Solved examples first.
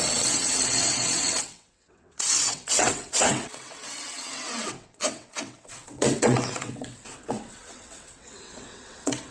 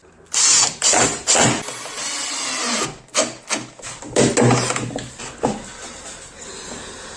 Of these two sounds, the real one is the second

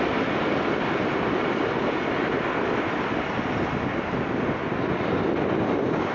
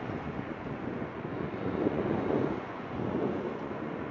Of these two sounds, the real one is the first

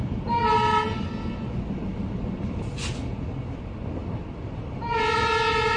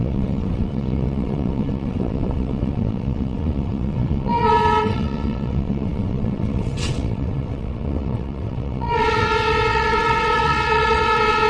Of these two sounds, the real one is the first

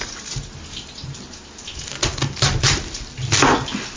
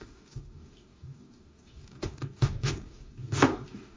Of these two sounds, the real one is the first